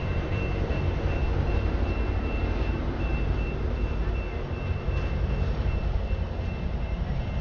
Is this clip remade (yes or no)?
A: yes